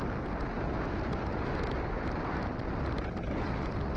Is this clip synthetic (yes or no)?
no